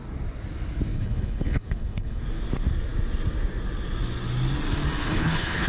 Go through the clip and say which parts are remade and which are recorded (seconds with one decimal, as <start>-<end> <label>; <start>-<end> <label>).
0.0-0.9 recorded; 0.9-2.2 remade; 2.2-5.0 recorded; 5.0-5.7 remade